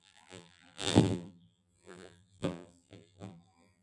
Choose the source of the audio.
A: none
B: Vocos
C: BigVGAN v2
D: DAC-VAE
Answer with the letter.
C